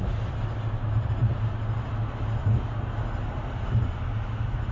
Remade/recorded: recorded